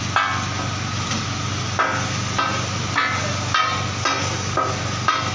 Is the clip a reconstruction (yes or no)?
no